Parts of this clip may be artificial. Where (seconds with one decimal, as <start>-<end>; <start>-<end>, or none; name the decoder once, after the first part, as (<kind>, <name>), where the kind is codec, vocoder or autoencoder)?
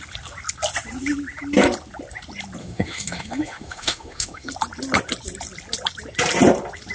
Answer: 2.6-4.5 (autoencoder, DAC-VAE)